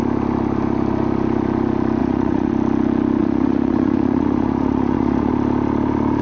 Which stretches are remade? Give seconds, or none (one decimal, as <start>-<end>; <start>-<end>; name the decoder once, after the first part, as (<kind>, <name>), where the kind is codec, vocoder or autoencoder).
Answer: 2.0-2.5 (vocoder, Vocos); 3.2-5.3